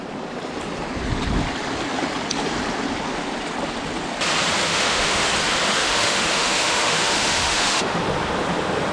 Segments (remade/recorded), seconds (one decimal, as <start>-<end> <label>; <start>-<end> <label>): 0.0-4.7 recorded; 4.7-5.3 remade; 5.3-5.7 recorded; 5.7-8.0 remade; 8.0-8.9 recorded